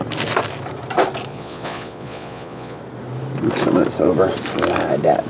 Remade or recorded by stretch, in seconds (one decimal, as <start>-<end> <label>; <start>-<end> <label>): 0.0-1.3 recorded; 1.3-2.8 remade; 2.8-5.3 recorded